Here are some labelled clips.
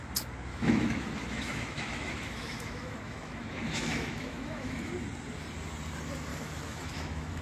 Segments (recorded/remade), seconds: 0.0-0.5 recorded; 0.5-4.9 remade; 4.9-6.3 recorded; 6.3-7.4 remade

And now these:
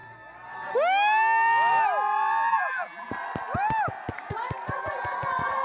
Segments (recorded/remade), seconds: 0.0-2.5 recorded; 2.5-3.1 remade; 3.1-5.6 recorded